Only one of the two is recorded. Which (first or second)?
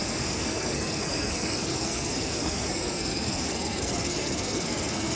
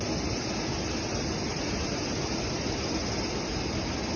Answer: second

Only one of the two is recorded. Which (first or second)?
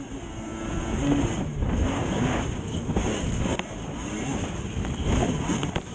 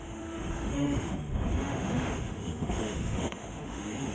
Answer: first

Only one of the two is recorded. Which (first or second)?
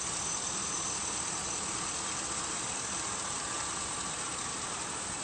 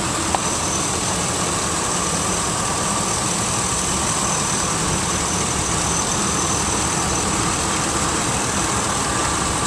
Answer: first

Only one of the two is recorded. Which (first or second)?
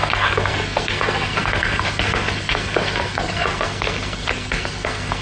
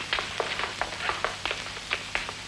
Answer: second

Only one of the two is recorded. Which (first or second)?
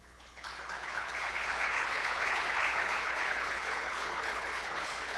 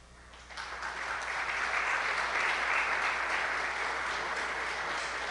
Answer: second